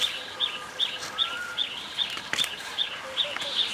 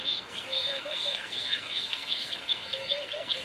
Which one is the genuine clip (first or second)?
first